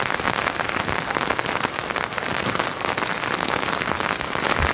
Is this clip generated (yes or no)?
no